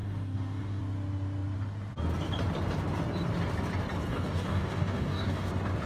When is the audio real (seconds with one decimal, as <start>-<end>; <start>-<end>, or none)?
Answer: 0.8-4.1; 5.5-5.9